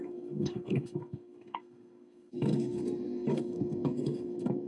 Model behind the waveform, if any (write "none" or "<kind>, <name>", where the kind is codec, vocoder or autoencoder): codec, SNAC